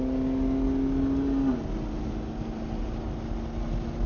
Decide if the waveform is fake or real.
real